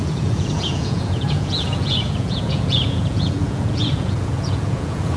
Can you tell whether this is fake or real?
fake